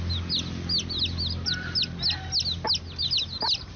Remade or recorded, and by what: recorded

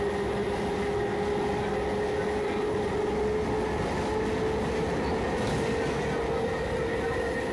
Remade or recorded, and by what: recorded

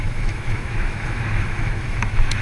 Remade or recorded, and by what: remade, autoencoder, DAC-VAE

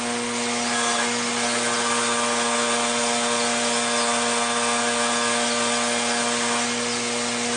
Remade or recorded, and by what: recorded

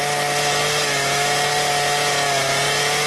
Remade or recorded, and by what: recorded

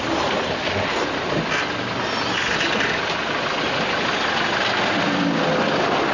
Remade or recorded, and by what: recorded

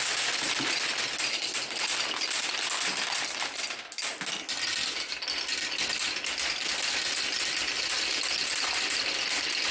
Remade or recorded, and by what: recorded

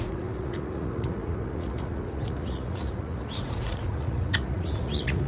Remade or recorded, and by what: remade, vocoder, Vocos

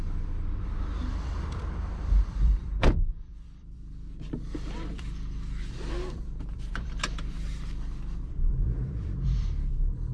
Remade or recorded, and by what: remade, vocoder, BigVGAN v2